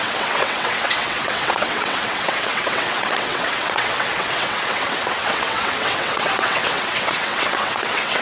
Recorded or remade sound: remade